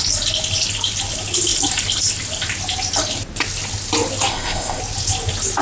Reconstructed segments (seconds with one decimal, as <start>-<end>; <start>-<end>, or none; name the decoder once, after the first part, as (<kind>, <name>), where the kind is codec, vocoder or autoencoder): 4.3-4.8 (codec, ZipCodec)